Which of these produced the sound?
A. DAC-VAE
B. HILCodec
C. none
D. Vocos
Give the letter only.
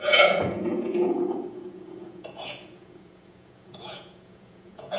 D